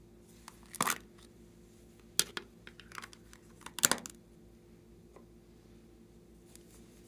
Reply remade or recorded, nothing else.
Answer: recorded